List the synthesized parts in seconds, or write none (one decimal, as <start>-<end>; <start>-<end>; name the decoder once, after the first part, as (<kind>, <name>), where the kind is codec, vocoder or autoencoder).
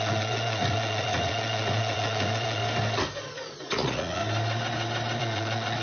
0.0-2.6 (vocoder, Vocos); 3.6-4.2; 5.2-5.8